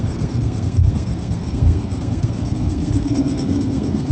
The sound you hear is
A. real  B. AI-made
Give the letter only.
B